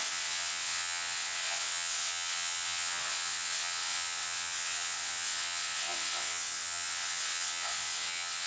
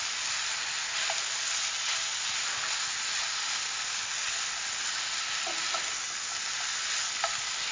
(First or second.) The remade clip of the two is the first